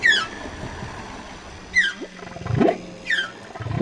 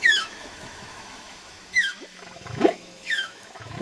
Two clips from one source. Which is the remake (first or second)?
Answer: second